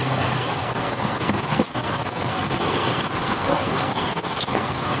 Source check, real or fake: fake